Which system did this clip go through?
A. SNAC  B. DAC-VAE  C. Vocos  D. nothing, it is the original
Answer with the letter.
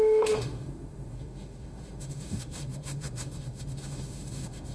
B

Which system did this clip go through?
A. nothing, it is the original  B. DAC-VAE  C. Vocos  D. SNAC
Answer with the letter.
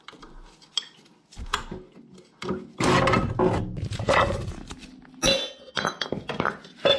A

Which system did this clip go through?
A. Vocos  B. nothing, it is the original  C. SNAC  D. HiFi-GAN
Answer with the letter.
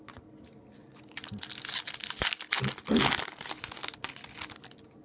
B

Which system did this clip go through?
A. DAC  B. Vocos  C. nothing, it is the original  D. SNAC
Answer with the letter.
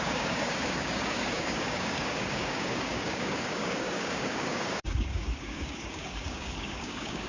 A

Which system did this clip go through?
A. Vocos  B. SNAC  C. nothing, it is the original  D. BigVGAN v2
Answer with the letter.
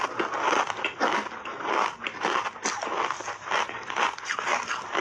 C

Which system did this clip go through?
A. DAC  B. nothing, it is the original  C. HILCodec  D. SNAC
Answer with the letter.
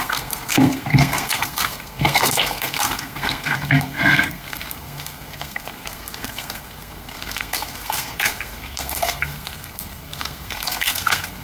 D